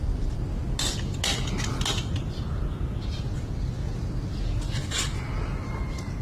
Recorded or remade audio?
recorded